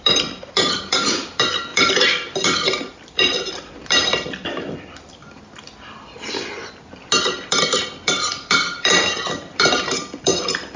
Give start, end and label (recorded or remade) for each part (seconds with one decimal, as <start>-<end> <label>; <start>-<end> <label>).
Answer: 0.0-5.2 remade; 5.2-7.5 recorded; 7.5-10.8 remade